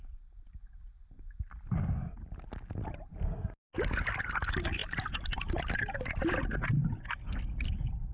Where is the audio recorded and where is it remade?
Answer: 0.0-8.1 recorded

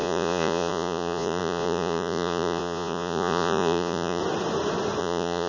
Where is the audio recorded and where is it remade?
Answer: 0.0-4.2 remade; 4.2-5.0 recorded; 5.0-5.5 remade

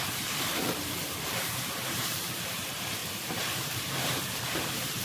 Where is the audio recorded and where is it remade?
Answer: 0.0-3.0 remade; 3.0-3.6 recorded; 3.6-5.0 remade

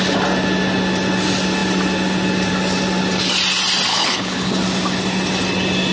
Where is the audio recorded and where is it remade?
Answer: 0.0-3.9 recorded; 3.9-4.5 remade; 4.5-5.9 recorded

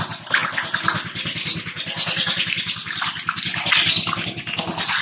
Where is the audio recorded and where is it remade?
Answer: 0.0-5.0 recorded

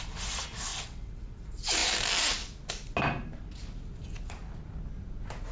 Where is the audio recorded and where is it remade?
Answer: 0.0-0.7 recorded; 0.7-1.3 remade; 1.3-5.5 recorded

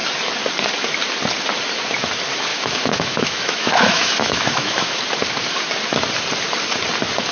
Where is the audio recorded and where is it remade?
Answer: 0.0-2.5 recorded; 2.5-5.0 remade; 5.0-7.3 recorded

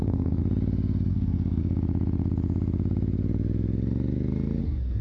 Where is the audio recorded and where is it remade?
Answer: 0.0-0.4 remade; 0.4-1.1 recorded; 1.1-1.6 remade; 1.6-4.6 recorded; 4.6-5.0 remade